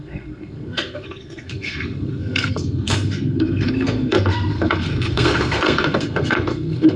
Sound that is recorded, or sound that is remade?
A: remade